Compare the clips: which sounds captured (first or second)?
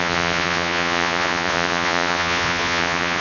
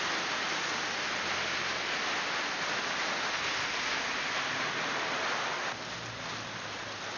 second